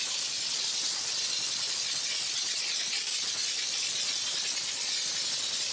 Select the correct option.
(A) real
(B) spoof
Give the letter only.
A